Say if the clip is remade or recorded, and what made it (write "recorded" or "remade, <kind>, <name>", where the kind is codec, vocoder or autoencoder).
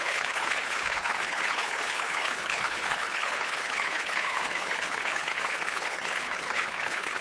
remade, codec, HILCodec